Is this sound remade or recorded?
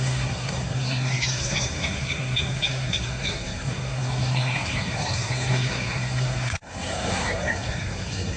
remade